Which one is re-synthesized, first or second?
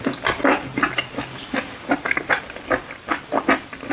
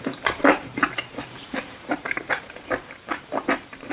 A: second